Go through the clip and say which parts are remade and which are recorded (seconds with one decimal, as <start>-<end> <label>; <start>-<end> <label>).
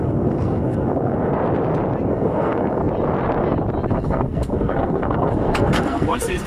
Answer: 0.0-1.3 remade; 1.3-2.1 recorded; 2.1-2.8 remade; 2.8-3.9 recorded; 3.9-6.5 remade